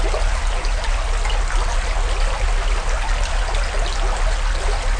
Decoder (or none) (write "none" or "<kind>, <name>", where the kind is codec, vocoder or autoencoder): none